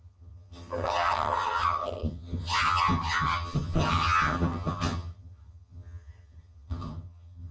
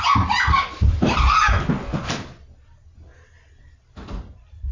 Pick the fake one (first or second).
first